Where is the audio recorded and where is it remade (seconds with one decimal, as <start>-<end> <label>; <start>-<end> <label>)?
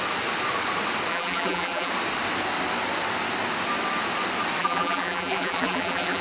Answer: 0.0-1.1 recorded; 1.1-1.9 remade; 1.9-4.6 recorded; 4.6-6.2 remade